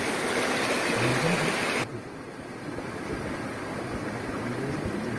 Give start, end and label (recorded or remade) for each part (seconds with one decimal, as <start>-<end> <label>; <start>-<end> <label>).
0.0-5.2 recorded